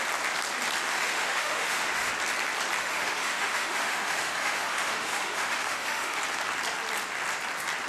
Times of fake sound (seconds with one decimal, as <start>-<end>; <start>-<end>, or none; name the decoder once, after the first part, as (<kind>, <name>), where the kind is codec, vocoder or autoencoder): 0.9-2.1 (autoencoder, DAC-VAE); 2.8-6.2